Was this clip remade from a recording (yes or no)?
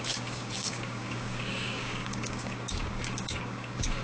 yes